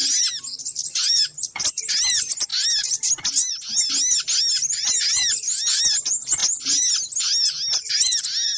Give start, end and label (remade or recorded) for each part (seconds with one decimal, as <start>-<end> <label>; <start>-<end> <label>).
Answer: 0.0-8.6 recorded